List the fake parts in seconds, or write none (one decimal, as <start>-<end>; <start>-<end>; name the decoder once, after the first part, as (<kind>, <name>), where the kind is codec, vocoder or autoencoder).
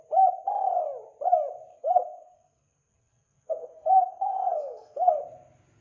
1.7-5.2 (codec, SNAC)